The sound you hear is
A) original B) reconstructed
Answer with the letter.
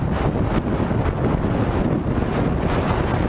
A